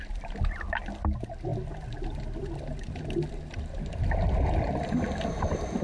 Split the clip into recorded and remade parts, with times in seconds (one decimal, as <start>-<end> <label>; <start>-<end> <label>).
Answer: 0.0-3.7 recorded; 3.7-5.8 remade